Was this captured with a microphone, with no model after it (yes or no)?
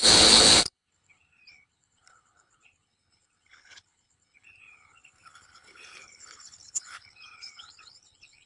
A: no